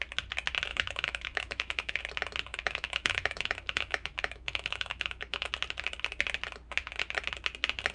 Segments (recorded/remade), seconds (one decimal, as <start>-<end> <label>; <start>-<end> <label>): 0.0-0.7 recorded; 0.7-2.0 remade; 2.0-2.5 recorded; 2.5-5.5 remade; 5.5-7.9 recorded